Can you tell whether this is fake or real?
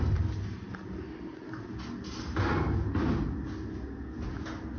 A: real